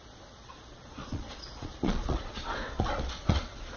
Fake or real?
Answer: fake